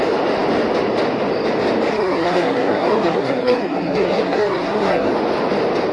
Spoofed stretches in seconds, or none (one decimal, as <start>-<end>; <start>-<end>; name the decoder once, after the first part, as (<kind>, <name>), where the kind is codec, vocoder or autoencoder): 1.9-5.1 (codec, SNAC)